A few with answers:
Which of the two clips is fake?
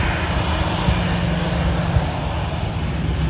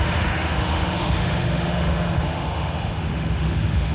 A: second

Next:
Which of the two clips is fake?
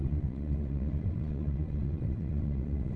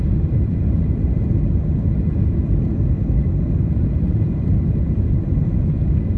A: first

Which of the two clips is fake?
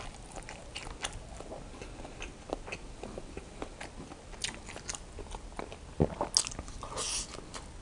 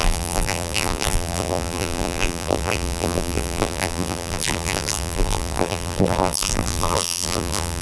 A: second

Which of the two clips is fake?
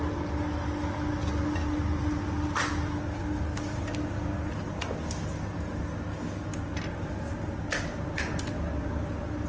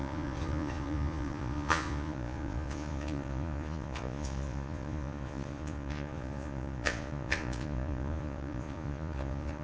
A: second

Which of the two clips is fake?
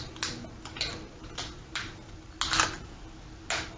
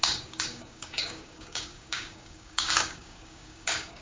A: second